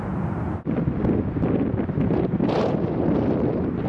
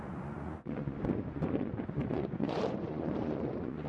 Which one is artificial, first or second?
second